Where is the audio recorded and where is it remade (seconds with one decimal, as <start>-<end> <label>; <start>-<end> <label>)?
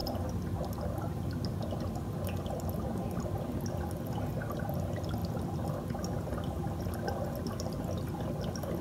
0.0-8.8 recorded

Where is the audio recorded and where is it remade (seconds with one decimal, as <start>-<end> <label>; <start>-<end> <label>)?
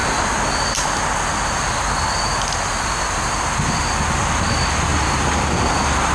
0.0-6.1 recorded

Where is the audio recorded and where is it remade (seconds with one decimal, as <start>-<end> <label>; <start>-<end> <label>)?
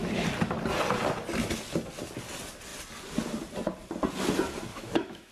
0.0-4.7 recorded; 4.7-5.3 remade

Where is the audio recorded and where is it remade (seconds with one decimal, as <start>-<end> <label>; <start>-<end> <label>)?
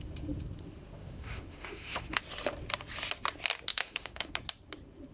0.0-1.0 recorded; 1.0-2.2 remade; 2.2-3.7 recorded; 3.7-4.3 remade; 4.3-5.1 recorded